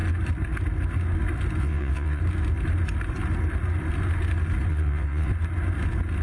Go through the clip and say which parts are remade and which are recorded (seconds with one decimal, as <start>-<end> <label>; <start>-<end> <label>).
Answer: 0.0-1.6 recorded; 1.6-2.2 remade; 2.2-4.7 recorded; 4.7-5.3 remade; 5.3-6.2 recorded